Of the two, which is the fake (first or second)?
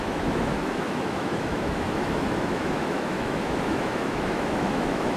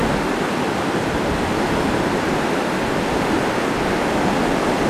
first